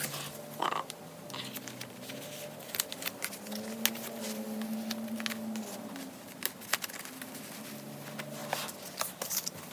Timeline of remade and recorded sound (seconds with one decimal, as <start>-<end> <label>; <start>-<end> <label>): 0.0-9.7 recorded